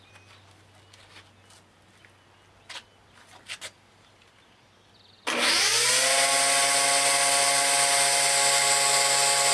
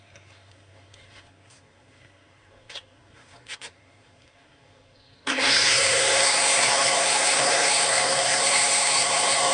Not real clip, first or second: second